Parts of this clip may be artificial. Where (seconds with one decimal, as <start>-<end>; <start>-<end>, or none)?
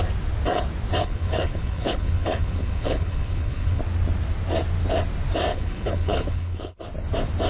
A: 1.0-3.8; 5.5-6.8